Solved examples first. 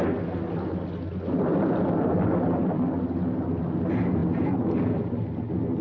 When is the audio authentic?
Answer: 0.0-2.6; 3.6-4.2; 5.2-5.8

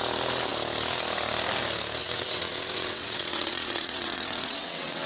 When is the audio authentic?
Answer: 0.0-2.0

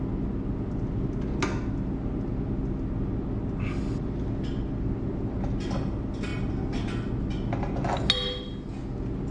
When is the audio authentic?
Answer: 0.0-9.3

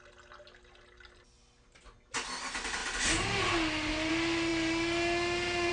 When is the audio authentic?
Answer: 0.0-5.7